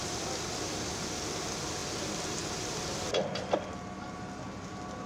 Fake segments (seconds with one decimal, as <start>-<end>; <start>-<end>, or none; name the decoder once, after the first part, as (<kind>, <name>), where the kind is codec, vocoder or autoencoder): none